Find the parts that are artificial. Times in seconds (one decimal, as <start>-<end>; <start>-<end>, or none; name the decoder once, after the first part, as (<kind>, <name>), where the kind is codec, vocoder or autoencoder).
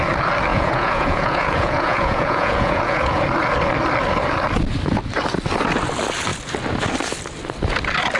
0.5-3.2 (vocoder, Vocos)